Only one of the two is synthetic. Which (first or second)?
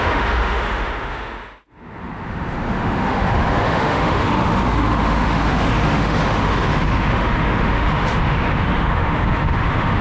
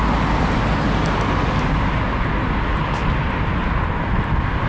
first